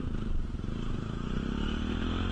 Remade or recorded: remade